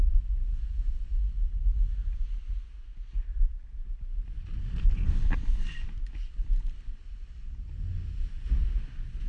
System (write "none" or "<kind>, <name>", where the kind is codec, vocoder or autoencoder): none